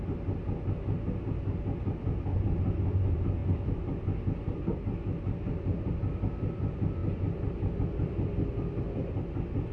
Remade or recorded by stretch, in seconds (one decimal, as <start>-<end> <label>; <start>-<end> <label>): 0.0-9.7 recorded